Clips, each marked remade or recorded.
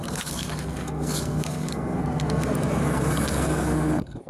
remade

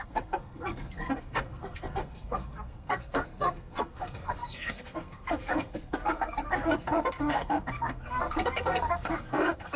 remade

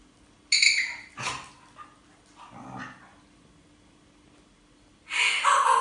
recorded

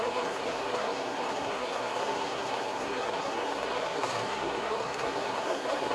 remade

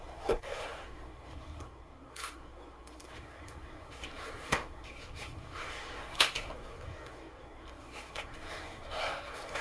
remade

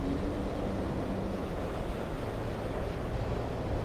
recorded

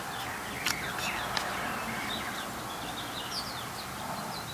recorded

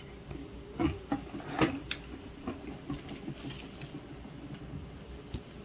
recorded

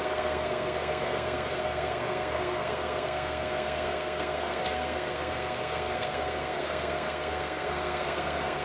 remade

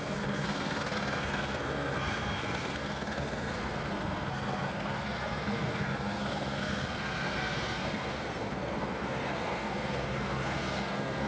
remade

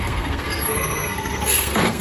remade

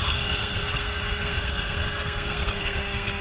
remade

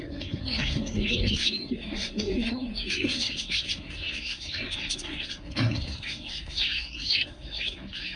remade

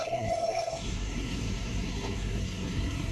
remade